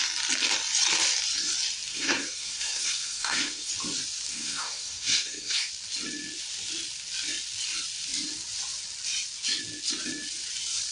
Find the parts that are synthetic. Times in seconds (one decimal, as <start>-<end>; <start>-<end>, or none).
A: 1.9-3.7; 4.3-5.7